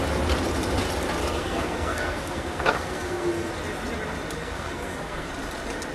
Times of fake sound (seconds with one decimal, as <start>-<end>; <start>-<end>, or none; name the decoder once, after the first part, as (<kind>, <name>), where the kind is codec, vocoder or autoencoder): 1.2-3.5 (codec, SNAC); 4.4-5.3